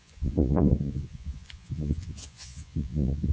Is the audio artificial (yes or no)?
yes